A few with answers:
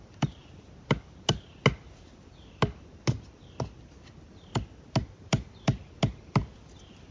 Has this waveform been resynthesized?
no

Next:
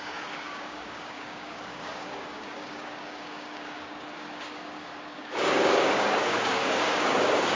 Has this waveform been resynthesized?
yes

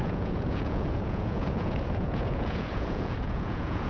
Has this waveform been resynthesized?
yes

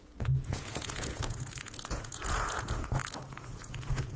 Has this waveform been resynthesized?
yes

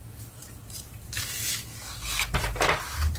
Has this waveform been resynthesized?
no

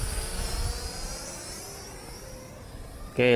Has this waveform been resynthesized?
no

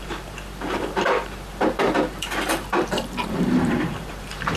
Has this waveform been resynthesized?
yes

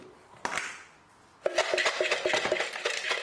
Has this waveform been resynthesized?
no